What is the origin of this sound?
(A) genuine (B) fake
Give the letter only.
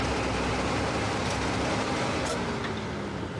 A